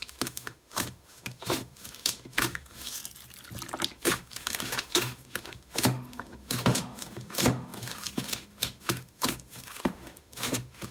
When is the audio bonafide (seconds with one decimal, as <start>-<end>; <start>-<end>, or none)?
3.0-3.9